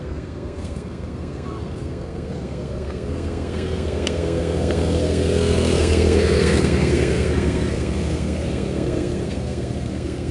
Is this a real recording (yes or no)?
no